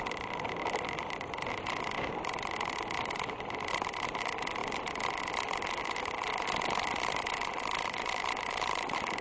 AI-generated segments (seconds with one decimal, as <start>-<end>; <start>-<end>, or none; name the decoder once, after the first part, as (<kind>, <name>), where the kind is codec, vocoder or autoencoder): 0.0-4.6 (vocoder, BigVGAN v2); 7.1-9.2